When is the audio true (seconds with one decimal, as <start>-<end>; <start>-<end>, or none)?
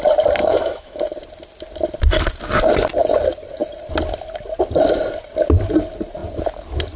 0.0-0.4; 1.0-7.0